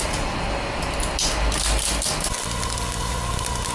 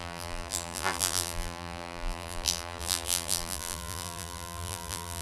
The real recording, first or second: first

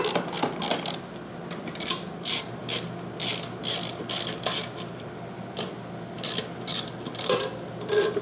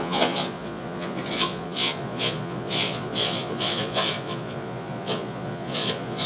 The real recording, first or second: first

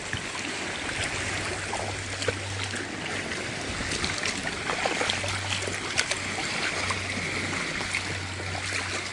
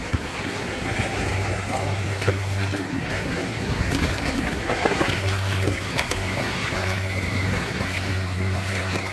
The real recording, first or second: first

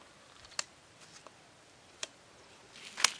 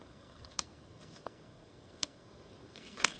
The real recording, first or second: first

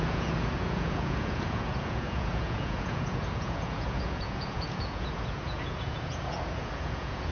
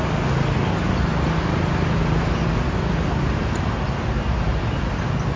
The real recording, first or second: second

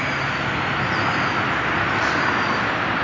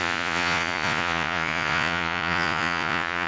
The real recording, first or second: first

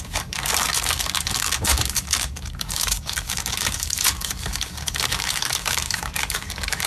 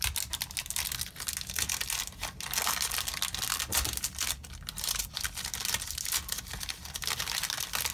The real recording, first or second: second